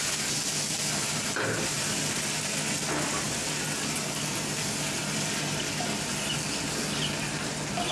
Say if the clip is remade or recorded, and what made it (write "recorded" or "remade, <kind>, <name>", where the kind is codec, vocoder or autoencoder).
recorded